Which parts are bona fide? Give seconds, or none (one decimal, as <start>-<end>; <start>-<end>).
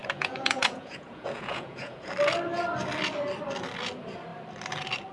2.1-5.1